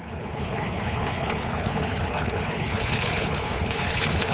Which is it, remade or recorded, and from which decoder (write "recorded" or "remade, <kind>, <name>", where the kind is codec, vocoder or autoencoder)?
remade, codec, HILCodec